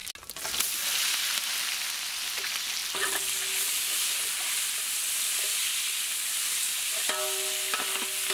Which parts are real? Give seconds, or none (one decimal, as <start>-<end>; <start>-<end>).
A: 0.0-8.3